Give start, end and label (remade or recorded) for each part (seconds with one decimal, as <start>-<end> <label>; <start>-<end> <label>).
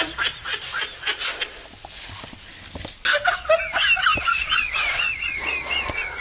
0.0-0.5 remade; 0.5-1.0 recorded; 1.0-1.6 remade; 1.6-4.2 recorded; 4.2-6.2 remade